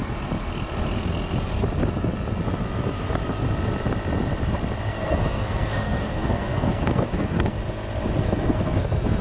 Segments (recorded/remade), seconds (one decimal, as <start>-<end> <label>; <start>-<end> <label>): 0.0-4.9 recorded; 4.9-7.6 remade; 7.6-8.2 recorded; 8.2-9.2 remade